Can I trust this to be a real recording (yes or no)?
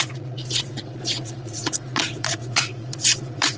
no